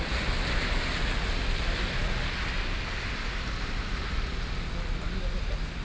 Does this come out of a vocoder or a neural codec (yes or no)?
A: no